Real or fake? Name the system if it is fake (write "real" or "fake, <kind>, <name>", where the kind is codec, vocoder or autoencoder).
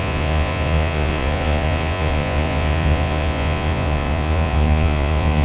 fake, vocoder, Vocos